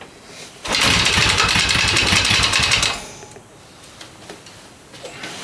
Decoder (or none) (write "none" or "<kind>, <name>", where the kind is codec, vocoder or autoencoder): vocoder, BigVGAN v2